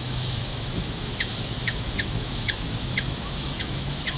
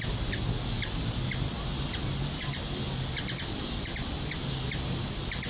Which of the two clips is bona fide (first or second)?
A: second